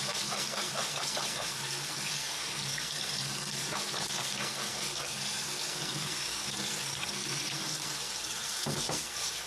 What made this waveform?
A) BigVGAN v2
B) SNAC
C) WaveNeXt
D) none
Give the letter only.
B